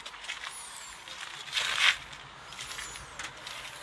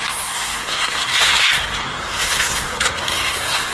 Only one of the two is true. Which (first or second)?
first